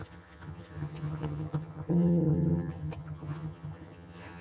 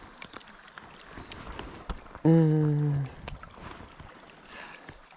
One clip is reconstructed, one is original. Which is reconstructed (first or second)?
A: first